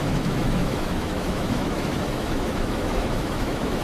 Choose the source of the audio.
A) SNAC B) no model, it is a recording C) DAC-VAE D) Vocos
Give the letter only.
C